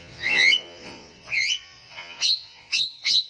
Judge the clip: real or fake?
fake